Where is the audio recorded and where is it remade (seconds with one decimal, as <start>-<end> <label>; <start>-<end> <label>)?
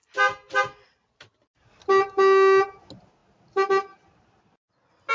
0.0-5.1 recorded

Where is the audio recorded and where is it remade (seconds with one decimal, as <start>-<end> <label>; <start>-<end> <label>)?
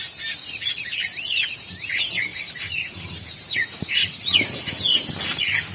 0.0-2.3 recorded; 2.3-4.0 remade; 4.0-5.7 recorded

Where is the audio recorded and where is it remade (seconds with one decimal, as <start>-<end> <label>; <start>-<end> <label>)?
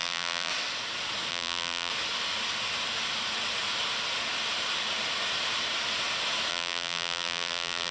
0.0-0.5 remade; 0.5-1.3 recorded; 1.3-1.9 remade; 1.9-6.5 recorded; 6.5-7.9 remade